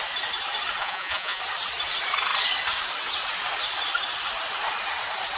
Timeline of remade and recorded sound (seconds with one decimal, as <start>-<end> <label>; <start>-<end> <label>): 0.0-0.8 recorded; 0.8-1.4 remade; 1.4-5.4 recorded